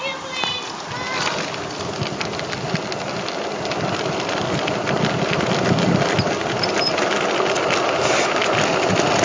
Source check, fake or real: real